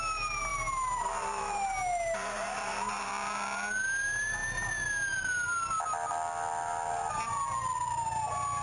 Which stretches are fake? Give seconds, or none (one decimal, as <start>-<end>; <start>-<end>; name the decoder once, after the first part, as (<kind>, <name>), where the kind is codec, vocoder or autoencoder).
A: 0.5-3.1 (vocoder, BigVGAN v2)